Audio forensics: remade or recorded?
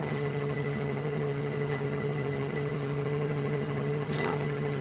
remade